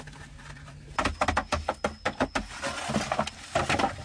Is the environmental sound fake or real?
real